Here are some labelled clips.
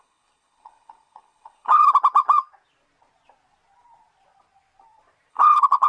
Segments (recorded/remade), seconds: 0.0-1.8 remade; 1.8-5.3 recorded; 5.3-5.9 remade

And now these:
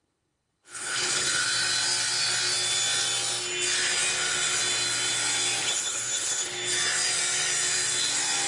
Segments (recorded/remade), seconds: 0.0-1.4 remade; 1.4-5.6 recorded; 5.6-6.5 remade; 6.5-8.5 recorded

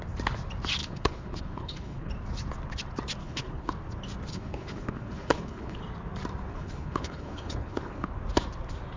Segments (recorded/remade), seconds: 0.0-0.8 recorded; 0.8-2.1 remade; 2.1-3.2 recorded; 3.2-3.7 remade; 3.7-4.3 recorded; 4.3-5.8 remade; 5.8-6.5 recorded; 6.5-8.1 remade; 8.1-9.0 recorded